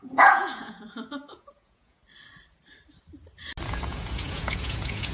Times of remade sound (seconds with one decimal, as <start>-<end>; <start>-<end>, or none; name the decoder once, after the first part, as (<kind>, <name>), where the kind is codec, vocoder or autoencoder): 0.0-2.0 (vocoder, Vocos); 3.7-5.1